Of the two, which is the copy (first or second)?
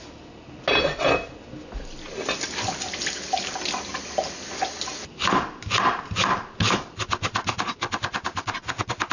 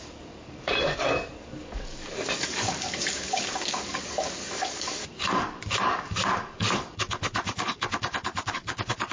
second